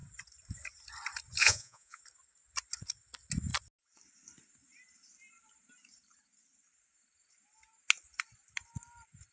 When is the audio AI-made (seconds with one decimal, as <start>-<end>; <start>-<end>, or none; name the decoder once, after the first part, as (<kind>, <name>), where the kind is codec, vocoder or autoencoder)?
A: 1.4-2.0 (vocoder, Vocos)

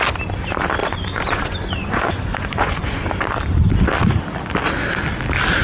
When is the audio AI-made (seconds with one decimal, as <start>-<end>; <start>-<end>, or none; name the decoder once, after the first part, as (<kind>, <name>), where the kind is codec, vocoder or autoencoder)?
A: 0.8-3.0 (vocoder, Vocos)